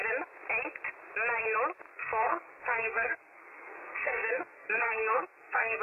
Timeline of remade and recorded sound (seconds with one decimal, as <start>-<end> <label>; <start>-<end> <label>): 0.0-1.9 recorded; 1.9-5.8 remade